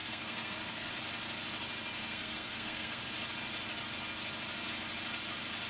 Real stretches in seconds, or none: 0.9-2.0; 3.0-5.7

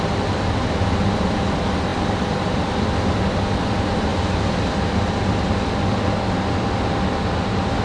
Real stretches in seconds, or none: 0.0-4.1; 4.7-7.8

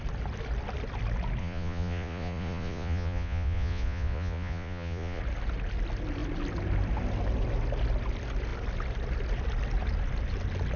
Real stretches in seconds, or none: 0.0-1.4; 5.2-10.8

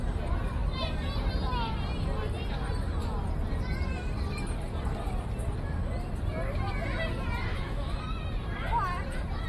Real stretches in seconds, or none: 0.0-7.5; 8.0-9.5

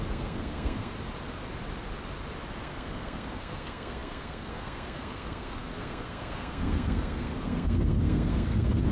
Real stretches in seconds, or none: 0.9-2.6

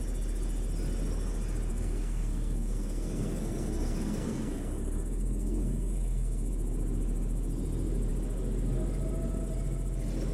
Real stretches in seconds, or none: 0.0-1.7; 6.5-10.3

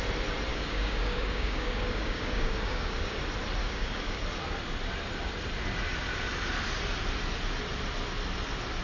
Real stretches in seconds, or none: 0.0-0.5; 3.2-3.6; 4.2-8.8